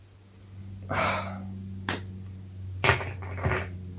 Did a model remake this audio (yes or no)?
no